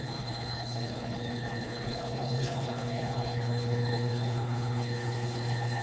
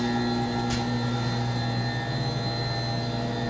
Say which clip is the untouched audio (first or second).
second